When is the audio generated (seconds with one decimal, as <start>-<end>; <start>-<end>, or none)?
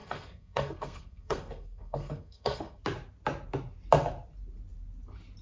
0.0-2.8